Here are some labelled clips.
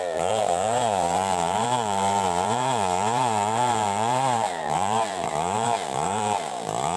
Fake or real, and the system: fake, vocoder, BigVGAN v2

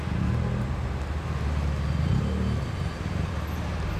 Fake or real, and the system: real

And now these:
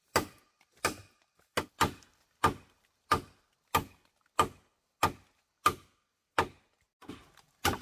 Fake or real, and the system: real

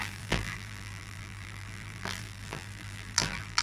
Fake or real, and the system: fake, vocoder, BigVGAN v2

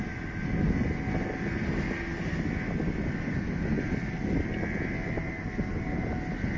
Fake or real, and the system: real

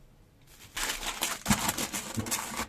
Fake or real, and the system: real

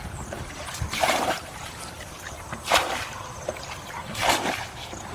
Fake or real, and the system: fake, vocoder, BigVGAN v2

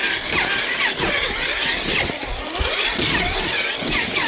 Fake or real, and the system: real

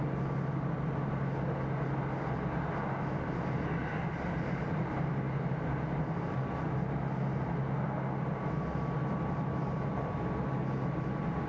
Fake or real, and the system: real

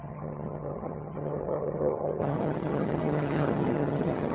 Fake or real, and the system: fake, vocoder, HiFi-GAN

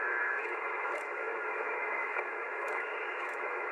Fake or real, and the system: fake, autoencoder, DAC-VAE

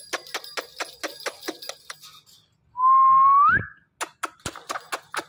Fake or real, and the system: real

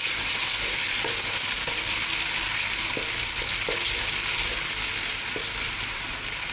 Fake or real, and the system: real